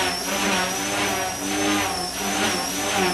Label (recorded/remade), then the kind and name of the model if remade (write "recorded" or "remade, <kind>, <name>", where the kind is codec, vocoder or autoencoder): recorded